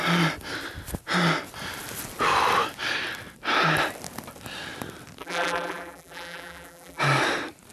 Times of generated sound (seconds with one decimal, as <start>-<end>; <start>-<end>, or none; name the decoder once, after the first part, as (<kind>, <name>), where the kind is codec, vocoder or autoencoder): 5.2-7.0 (vocoder, BigVGAN v2)